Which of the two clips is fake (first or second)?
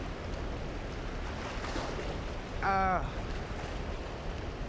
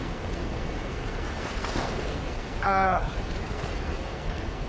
second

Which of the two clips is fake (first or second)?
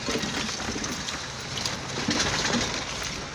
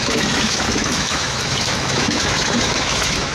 second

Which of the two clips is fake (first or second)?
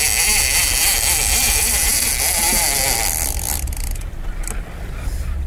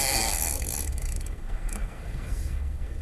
second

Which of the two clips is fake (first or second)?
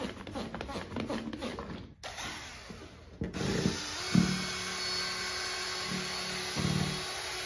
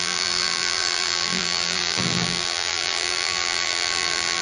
second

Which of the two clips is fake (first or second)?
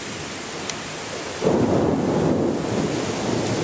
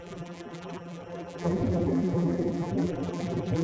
second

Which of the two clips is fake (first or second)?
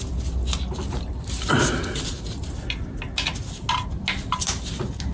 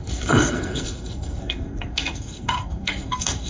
second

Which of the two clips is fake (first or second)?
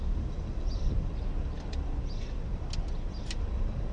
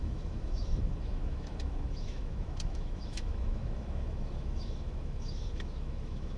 second